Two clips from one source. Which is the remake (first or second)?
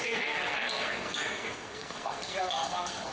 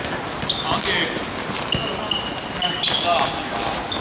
first